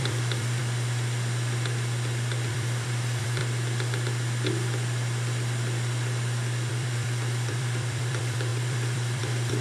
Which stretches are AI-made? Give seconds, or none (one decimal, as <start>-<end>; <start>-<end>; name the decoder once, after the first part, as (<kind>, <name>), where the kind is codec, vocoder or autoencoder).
0.0-0.6 (vocoder, BigVGAN v2); 2.5-3.4; 6.7-9.6